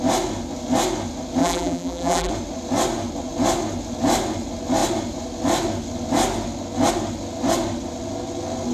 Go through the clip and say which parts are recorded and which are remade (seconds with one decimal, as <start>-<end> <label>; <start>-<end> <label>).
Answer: 0.0-1.4 recorded; 1.4-2.3 remade; 2.3-8.7 recorded